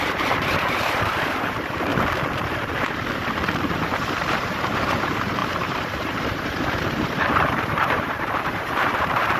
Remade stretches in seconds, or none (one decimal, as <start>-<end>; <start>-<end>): 0.0-1.9; 4.3-9.4